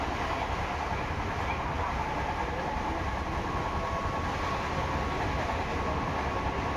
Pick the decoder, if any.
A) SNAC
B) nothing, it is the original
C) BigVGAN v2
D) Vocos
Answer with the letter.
B